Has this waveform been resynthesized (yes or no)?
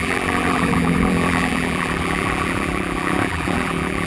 yes